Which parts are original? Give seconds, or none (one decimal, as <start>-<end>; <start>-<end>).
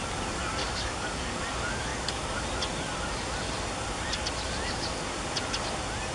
0.0-0.6; 1.4-1.9; 2.4-6.1